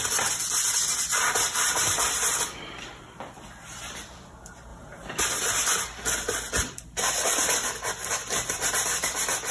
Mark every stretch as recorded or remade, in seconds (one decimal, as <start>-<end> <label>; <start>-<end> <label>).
0.0-4.7 remade; 4.7-5.2 recorded; 5.2-9.5 remade